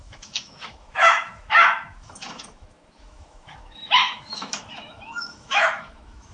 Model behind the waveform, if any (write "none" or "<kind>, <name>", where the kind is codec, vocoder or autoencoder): autoencoder, DAC-VAE